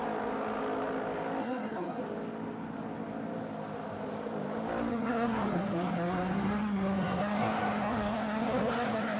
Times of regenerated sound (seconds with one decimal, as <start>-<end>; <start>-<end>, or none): 1.4-2.0; 4.9-9.2